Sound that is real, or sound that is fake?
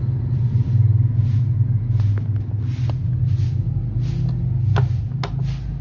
real